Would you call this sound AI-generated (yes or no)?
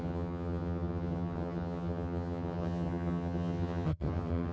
yes